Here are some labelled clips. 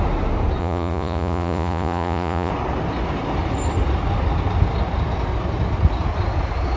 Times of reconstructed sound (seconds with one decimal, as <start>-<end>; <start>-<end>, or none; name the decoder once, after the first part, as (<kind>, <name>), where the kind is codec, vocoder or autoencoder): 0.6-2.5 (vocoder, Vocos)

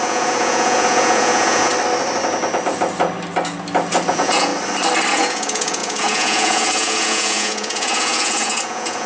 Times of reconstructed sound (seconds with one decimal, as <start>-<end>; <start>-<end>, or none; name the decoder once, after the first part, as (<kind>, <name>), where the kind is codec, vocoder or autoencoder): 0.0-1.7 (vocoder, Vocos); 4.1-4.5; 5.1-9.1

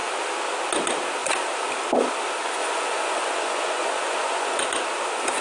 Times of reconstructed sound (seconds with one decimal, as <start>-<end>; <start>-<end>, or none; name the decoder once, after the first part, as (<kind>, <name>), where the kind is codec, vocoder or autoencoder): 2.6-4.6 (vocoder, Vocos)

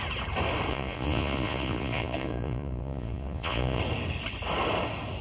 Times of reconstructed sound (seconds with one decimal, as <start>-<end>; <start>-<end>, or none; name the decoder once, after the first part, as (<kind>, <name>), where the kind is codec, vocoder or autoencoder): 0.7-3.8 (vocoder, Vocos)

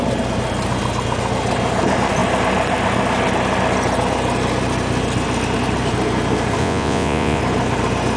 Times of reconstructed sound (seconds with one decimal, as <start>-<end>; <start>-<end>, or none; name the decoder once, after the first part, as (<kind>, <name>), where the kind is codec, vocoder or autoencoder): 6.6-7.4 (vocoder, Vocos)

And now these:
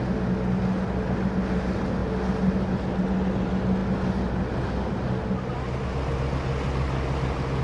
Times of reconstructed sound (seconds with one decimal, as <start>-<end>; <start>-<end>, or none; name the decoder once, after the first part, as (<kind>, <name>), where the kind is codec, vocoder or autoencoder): none

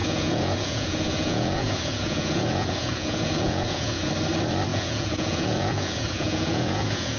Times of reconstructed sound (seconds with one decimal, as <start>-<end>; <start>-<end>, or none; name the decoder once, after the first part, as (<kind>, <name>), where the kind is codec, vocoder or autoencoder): 0.0-4.1 (vocoder, Vocos); 4.7-7.2

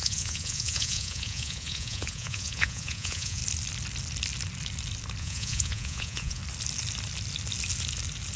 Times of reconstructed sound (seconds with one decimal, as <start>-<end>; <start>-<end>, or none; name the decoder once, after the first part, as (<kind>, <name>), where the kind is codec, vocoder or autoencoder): 0.0-3.4 (vocoder, Vocos); 5.2-6.4